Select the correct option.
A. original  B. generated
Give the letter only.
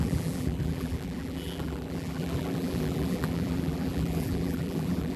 B